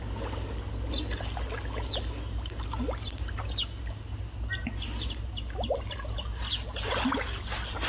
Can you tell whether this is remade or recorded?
recorded